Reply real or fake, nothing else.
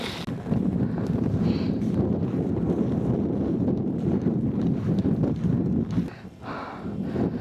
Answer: real